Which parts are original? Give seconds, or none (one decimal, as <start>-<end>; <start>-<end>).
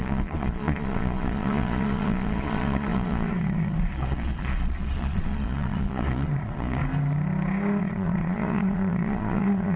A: 6.8-7.8